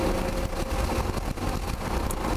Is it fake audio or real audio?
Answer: real